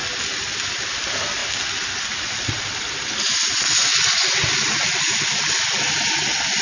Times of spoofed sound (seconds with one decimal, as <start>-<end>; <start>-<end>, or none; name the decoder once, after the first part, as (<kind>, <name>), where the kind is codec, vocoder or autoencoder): 0.7-1.4 (vocoder, BigVGAN v2); 2.2-3.9; 4.5-6.6